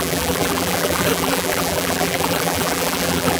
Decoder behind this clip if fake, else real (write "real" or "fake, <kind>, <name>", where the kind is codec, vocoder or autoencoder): fake, vocoder, BigVGAN v2